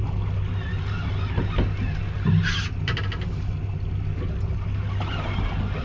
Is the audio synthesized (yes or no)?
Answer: no